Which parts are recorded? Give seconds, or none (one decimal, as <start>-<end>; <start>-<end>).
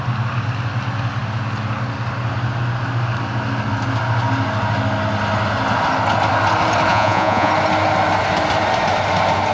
0.0-6.9; 7.5-9.5